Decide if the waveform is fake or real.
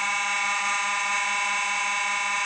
real